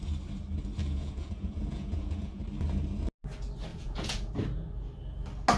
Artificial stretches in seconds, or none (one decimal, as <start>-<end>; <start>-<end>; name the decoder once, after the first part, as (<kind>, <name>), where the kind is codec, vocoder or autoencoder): 0.8-2.4 (vocoder, Vocos); 3.7-4.3